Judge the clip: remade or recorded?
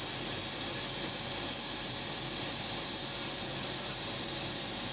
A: recorded